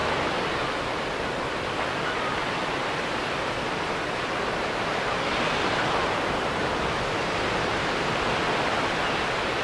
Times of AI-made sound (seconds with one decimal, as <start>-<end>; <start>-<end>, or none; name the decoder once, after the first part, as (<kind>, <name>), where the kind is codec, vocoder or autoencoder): none